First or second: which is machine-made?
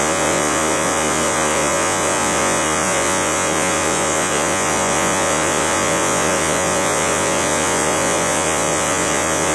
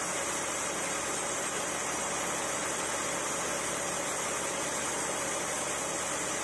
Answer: first